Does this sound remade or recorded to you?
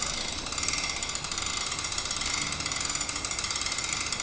recorded